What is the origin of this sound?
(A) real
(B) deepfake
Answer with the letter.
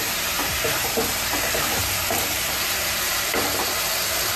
B